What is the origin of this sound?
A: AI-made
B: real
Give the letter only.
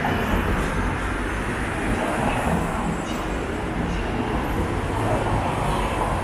B